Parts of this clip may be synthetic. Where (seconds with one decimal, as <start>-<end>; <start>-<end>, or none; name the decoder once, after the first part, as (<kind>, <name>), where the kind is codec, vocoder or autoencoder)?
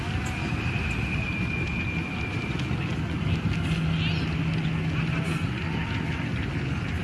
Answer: none